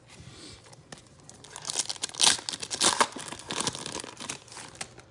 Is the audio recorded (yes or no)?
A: yes